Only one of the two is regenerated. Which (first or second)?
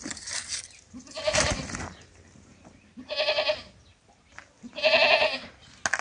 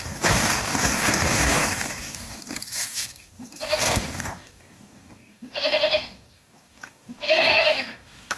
second